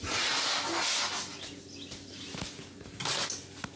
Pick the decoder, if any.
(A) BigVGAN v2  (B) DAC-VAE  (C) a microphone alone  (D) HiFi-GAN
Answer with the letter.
C